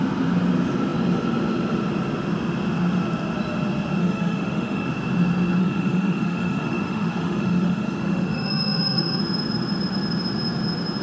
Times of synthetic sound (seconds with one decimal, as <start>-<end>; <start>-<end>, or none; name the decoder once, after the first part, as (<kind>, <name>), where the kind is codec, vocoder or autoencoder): 4.0-4.9 (autoencoder, DAC-VAE); 5.6-9.2